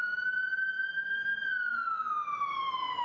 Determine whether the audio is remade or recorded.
recorded